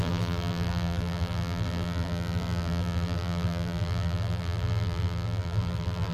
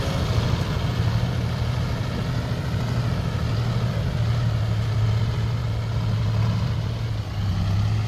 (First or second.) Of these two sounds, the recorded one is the second